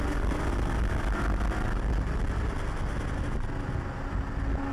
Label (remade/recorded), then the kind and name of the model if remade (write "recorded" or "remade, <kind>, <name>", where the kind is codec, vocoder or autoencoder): recorded